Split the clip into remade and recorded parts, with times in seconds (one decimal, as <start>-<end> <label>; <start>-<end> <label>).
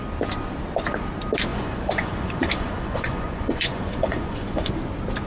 0.0-1.5 recorded; 1.5-4.7 remade; 4.7-5.3 recorded